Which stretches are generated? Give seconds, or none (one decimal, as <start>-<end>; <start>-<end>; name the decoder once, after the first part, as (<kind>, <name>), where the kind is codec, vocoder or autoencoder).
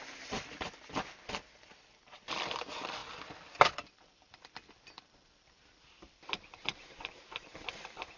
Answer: 0.0-8.2 (vocoder, BigVGAN v2)